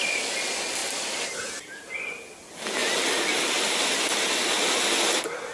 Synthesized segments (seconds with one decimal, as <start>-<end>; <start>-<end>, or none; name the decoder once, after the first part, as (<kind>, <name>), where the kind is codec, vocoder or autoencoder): none